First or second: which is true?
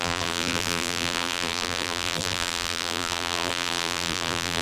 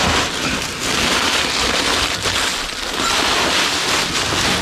second